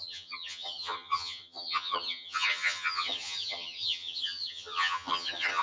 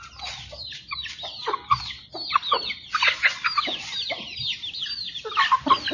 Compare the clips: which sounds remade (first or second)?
first